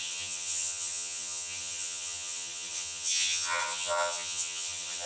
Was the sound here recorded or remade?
remade